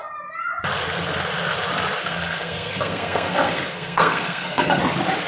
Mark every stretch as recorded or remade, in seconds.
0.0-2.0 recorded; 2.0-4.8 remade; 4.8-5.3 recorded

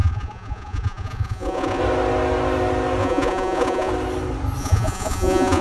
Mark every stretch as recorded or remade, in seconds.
0.0-1.8 remade; 1.8-3.0 recorded; 3.0-3.9 remade; 3.9-4.6 recorded; 4.6-5.6 remade

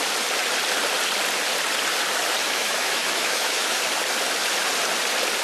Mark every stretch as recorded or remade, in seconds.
0.0-2.4 recorded; 2.4-3.8 remade; 3.8-5.4 recorded